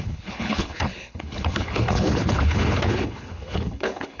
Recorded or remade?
remade